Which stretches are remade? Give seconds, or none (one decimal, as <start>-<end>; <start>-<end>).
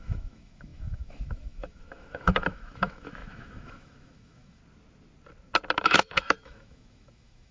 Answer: 0.0-4.6; 5.8-7.5